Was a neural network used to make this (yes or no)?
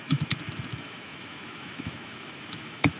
yes